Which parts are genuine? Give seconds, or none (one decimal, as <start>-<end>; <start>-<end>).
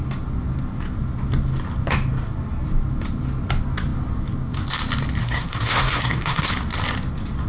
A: 0.0-5.2; 6.5-7.5